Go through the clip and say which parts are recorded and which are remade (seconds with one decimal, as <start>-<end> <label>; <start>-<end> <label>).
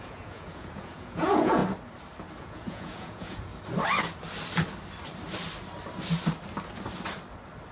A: 0.0-1.6 remade; 1.6-2.4 recorded; 2.4-3.5 remade; 3.5-7.7 recorded